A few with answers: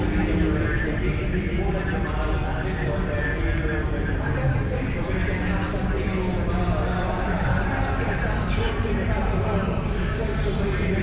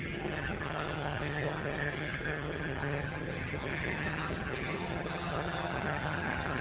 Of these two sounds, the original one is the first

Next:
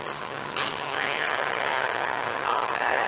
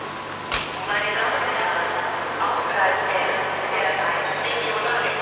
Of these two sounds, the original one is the second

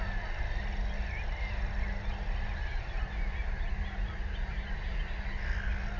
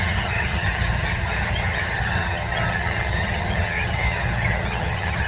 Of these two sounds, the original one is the first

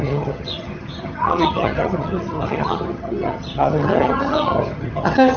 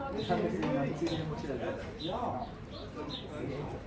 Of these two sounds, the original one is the second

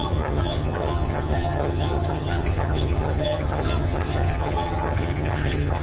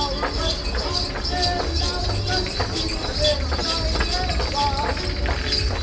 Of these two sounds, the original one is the second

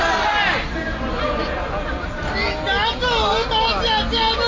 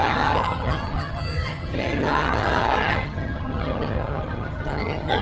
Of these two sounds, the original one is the first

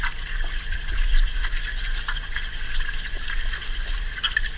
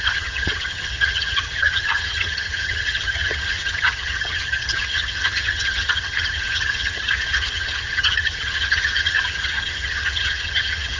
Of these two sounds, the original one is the first